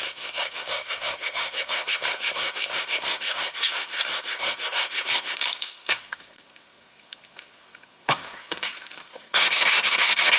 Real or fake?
fake